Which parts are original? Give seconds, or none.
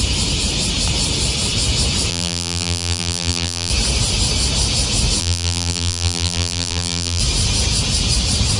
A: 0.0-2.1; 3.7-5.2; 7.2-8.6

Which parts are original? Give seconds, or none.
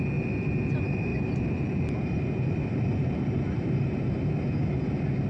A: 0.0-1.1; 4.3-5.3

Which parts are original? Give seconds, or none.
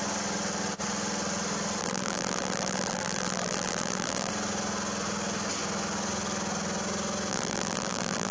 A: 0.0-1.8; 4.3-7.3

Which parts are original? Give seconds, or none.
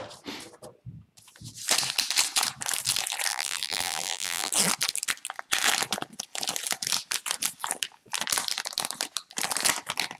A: 0.0-3.3; 4.5-10.2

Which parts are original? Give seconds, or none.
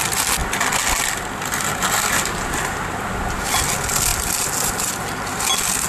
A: 0.0-5.9